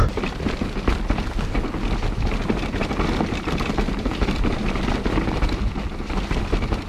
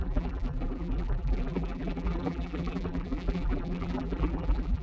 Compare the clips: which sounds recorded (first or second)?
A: first